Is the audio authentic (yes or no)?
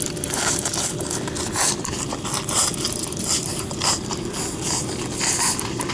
yes